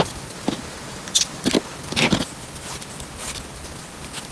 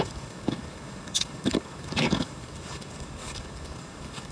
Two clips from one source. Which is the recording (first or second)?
first